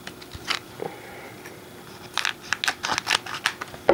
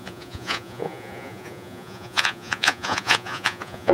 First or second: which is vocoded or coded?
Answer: second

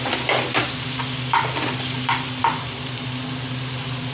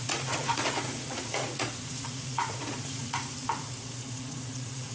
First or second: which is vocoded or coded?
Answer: second